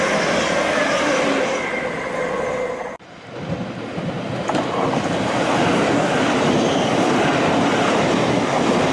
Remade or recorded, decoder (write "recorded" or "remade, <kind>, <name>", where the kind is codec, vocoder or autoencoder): recorded